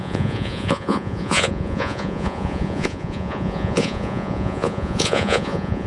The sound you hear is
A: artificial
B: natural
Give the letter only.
A